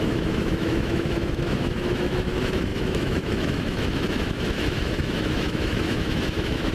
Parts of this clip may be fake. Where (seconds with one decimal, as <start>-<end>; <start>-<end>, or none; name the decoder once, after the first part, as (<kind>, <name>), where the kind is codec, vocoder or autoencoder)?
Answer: 0.0-6.7 (autoencoder, DAC-VAE)